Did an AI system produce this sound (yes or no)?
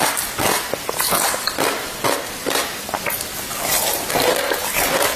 no